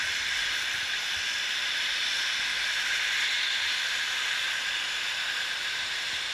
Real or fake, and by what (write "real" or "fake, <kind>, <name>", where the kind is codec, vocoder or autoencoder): real